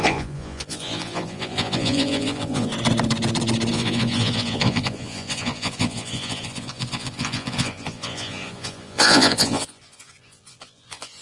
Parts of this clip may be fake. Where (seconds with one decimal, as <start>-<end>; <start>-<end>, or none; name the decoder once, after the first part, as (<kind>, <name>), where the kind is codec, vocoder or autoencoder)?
0.0-2.7 (vocoder, Vocos); 3.7-11.2